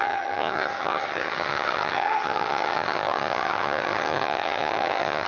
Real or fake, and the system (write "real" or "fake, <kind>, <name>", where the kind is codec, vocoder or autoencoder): fake, vocoder, HiFi-GAN